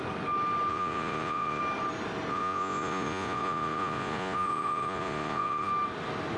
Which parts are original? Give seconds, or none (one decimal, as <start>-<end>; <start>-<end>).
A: 0.0-0.7; 1.6-2.3; 5.7-6.4